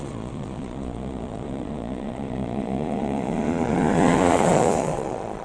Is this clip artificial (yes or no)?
yes